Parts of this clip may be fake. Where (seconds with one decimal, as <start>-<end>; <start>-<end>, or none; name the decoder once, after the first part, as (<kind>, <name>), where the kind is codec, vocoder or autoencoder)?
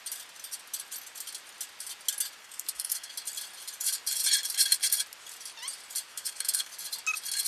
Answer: 2.4-3.1 (codec, SNAC); 6.1-6.7